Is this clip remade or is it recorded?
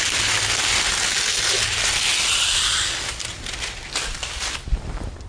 recorded